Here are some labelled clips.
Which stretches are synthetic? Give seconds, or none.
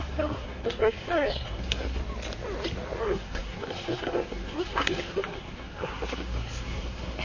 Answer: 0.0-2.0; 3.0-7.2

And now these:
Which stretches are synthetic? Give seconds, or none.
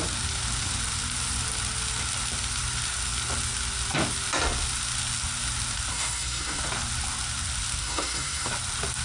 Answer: 5.9-6.6; 7.8-8.5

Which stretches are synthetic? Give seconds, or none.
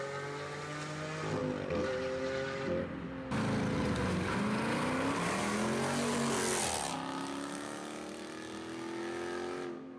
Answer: none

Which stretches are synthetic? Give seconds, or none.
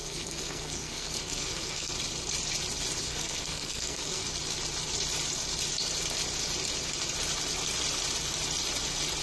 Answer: 0.0-1.9; 3.0-4.2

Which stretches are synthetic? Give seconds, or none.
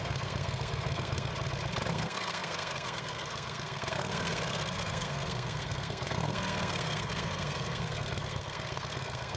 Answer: 0.0-1.3; 1.9-9.4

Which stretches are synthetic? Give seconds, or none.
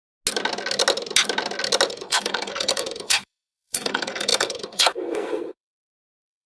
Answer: 1.9-6.5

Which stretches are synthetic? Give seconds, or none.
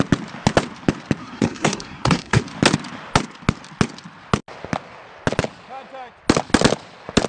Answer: 1.2-2.4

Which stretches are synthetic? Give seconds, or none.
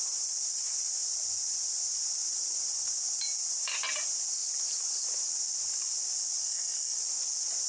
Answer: 6.4-7.0